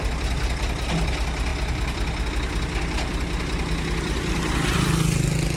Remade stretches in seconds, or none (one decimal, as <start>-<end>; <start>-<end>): none